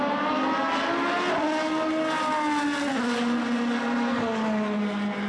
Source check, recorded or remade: recorded